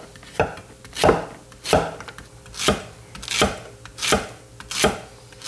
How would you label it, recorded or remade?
recorded